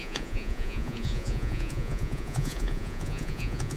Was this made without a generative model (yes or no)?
no